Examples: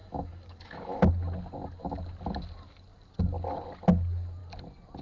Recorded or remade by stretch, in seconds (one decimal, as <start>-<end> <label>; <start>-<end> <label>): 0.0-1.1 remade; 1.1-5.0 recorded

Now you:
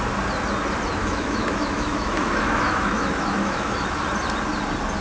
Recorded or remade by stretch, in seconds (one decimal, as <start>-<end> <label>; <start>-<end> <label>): 0.0-1.0 recorded; 1.0-4.0 remade; 4.0-5.0 recorded

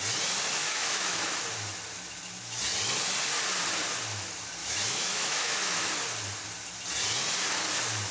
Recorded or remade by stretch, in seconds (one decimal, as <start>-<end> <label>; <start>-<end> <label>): 0.0-0.6 recorded; 0.6-1.4 remade; 1.4-4.6 recorded; 4.6-5.9 remade; 5.9-8.1 recorded

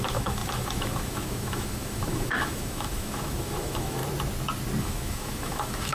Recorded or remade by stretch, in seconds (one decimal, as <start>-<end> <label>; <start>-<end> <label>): 0.0-4.0 remade; 4.0-4.8 recorded; 4.8-5.9 remade

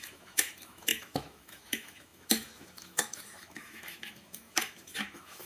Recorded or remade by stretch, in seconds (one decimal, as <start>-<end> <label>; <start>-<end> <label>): 0.0-5.5 remade